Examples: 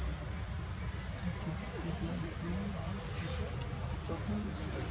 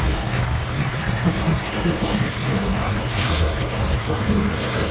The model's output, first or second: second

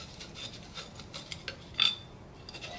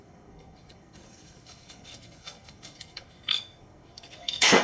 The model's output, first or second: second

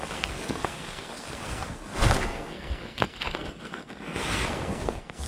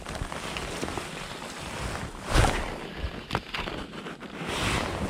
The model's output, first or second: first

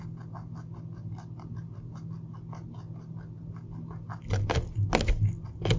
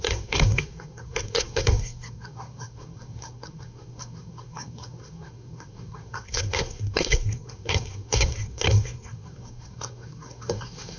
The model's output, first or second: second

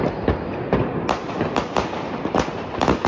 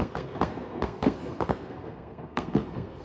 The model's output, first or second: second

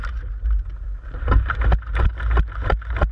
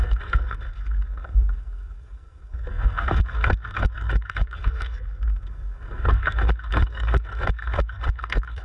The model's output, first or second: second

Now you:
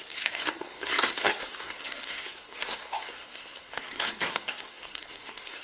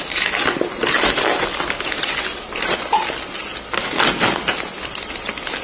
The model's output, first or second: first